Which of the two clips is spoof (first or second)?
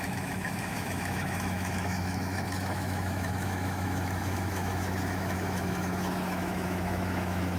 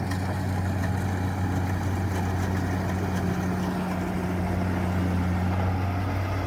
first